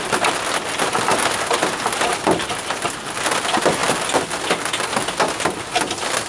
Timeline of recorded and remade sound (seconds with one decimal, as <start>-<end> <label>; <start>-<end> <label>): 0.0-6.3 recorded